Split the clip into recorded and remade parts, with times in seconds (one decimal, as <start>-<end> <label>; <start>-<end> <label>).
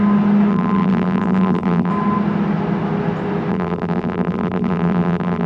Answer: 0.0-0.5 recorded; 0.5-1.9 remade; 1.9-3.5 recorded; 3.5-5.5 remade